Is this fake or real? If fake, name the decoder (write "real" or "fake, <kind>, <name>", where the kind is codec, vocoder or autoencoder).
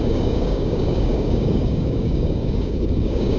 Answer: fake, codec, DAC